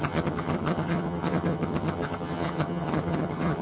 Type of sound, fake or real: fake